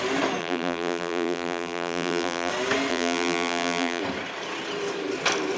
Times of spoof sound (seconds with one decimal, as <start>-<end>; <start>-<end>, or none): 0.4-2.5; 2.9-4.0